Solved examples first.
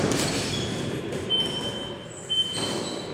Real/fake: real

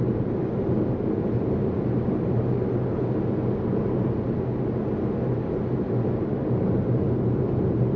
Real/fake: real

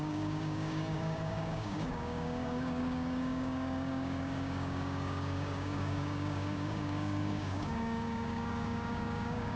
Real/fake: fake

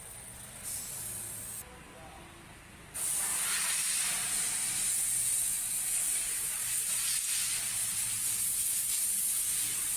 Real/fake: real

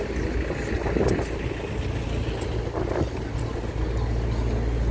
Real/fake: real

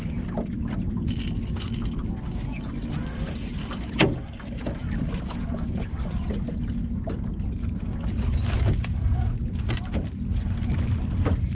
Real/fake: real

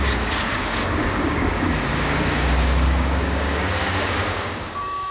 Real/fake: fake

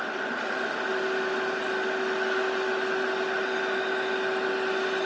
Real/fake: real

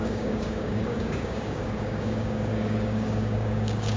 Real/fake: fake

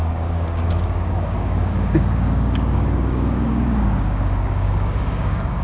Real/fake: fake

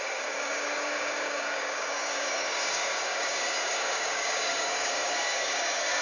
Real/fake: fake